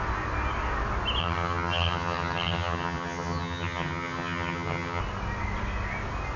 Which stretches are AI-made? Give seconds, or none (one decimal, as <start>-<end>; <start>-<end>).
1.2-5.0